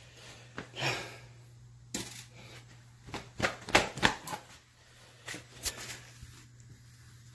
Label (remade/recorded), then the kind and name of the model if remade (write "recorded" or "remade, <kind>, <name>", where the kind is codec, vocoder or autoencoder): recorded